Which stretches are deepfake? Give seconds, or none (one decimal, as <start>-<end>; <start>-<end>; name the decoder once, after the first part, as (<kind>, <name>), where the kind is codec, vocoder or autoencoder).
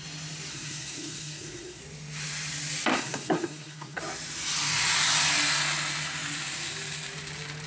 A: 0.5-1.8 (codec, SNAC); 2.9-4.0